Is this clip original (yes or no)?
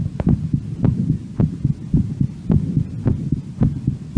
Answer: yes